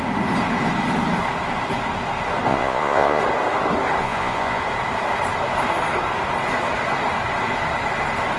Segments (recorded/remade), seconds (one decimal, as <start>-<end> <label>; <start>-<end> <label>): 0.0-2.5 recorded; 2.5-3.2 remade; 3.2-4.0 recorded; 4.0-4.6 remade; 4.6-8.4 recorded